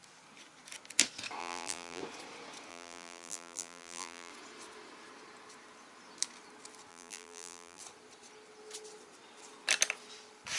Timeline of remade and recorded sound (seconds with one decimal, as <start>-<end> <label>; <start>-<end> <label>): 0.0-1.4 recorded; 1.4-2.0 remade; 2.0-2.7 recorded; 2.7-4.3 remade; 4.3-6.9 recorded; 6.9-7.8 remade; 7.8-10.6 recorded